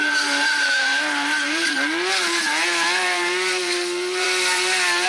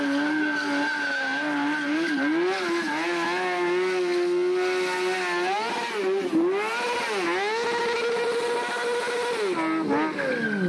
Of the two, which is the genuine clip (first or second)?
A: second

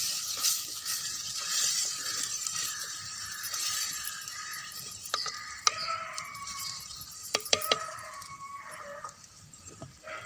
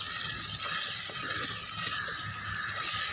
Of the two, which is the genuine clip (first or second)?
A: second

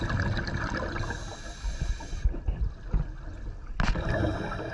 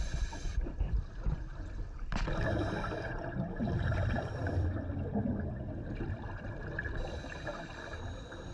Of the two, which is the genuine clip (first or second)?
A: first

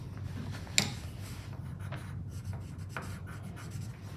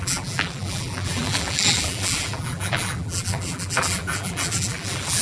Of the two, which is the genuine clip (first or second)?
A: first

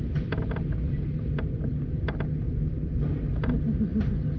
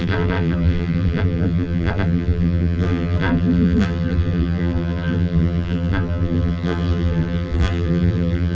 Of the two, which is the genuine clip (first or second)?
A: first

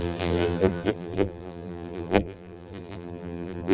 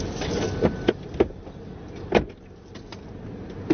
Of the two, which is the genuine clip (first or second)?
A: second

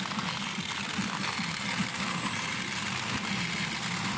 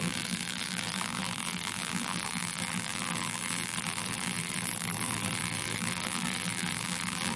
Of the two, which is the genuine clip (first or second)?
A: first